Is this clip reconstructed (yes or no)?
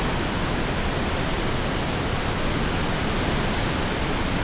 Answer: no